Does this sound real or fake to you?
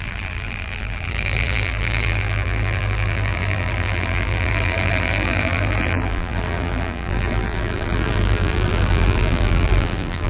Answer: fake